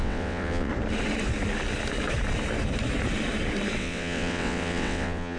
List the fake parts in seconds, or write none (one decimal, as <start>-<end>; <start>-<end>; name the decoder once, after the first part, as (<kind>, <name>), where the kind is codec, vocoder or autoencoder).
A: 0.0-0.7 (vocoder, WaveNeXt); 3.8-5.4